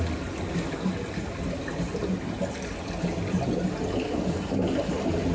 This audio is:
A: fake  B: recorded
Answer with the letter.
B